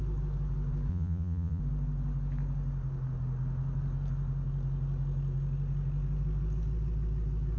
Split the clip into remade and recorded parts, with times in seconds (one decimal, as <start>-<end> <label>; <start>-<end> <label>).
0.0-0.9 recorded; 0.9-1.6 remade; 1.6-7.6 recorded